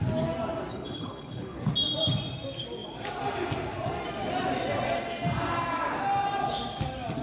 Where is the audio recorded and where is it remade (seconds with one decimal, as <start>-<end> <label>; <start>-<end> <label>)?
0.0-0.7 recorded; 0.7-1.6 remade; 1.6-7.2 recorded